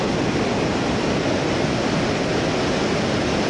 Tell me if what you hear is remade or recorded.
recorded